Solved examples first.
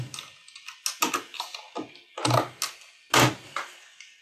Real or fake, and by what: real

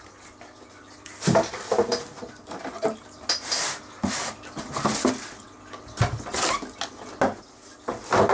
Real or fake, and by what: real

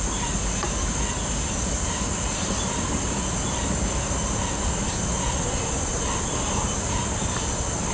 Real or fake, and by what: real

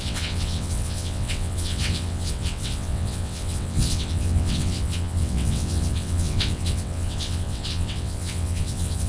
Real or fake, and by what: fake, vocoder, WaveNeXt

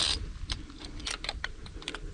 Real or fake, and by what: real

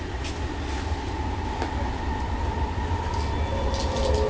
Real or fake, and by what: real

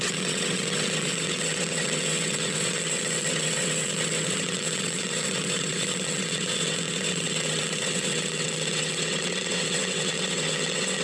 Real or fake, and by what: fake, vocoder, WaveNeXt